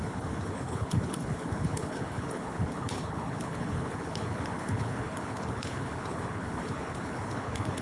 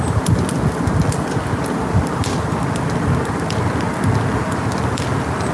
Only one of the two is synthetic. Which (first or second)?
first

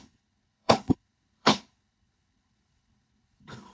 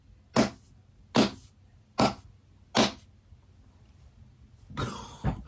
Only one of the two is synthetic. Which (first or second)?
first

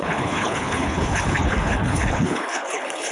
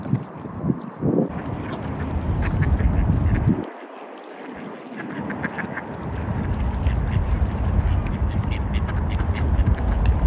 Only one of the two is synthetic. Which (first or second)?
first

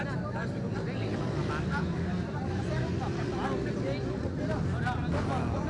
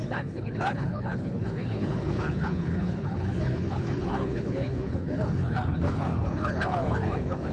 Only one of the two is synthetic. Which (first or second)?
second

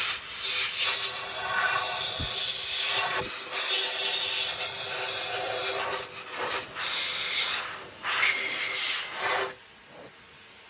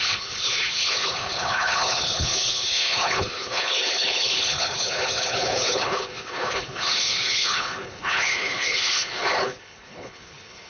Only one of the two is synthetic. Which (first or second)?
second